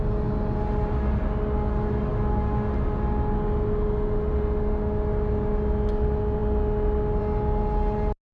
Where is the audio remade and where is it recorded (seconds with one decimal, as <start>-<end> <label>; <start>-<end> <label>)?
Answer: 0.0-8.3 recorded